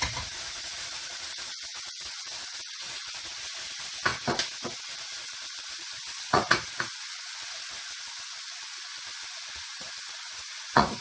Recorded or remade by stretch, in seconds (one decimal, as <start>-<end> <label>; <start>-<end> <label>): 0.0-4.1 remade; 4.1-4.8 recorded; 4.8-11.0 remade